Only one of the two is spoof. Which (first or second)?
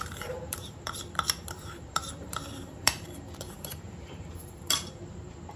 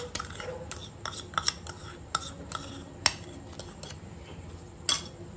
first